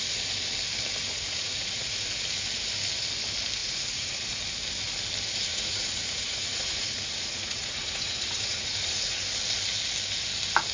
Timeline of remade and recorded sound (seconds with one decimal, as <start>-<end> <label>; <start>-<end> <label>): 0.0-1.0 recorded; 1.0-2.1 remade; 2.1-3.6 recorded; 3.6-4.4 remade; 4.4-5.5 recorded; 5.5-9.2 remade; 9.2-10.7 recorded

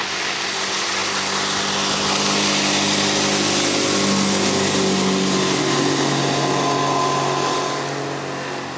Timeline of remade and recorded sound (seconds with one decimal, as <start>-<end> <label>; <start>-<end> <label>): 0.0-8.8 recorded

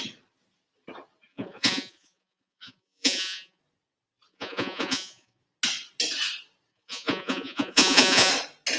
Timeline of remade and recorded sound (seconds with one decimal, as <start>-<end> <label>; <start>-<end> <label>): 0.0-1.3 recorded; 1.3-3.6 remade; 3.6-4.3 recorded; 4.3-5.4 remade; 5.4-6.7 recorded; 6.7-8.3 remade; 8.3-8.8 recorded